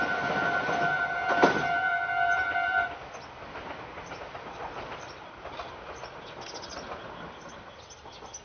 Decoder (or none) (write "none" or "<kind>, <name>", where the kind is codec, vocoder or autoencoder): none